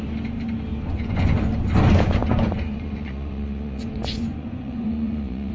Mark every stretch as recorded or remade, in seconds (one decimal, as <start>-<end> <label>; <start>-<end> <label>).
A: 0.0-0.9 recorded; 0.9-1.5 remade; 1.5-2.2 recorded; 2.2-5.5 remade

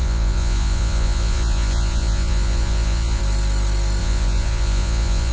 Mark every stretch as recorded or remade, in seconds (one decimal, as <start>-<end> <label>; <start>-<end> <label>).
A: 0.0-3.2 remade; 3.2-4.0 recorded; 4.0-5.3 remade

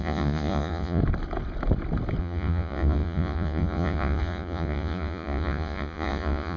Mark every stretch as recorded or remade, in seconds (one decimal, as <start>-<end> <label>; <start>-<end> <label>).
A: 0.0-1.0 remade; 1.0-2.2 recorded; 2.2-6.6 remade